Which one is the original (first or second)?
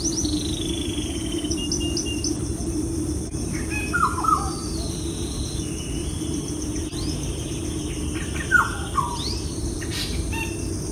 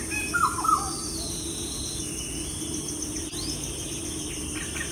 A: second